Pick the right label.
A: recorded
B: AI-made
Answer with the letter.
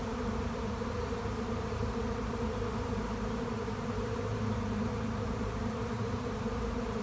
B